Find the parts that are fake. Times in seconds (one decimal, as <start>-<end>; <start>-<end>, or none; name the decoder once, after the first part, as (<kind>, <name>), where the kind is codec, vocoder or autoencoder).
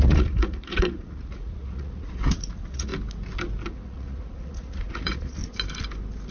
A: 0.0-2.9 (vocoder, Vocos); 3.7-5.4